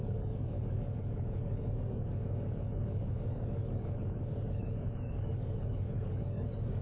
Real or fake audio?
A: fake